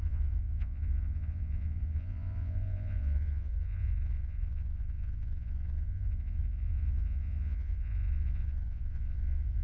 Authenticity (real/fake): fake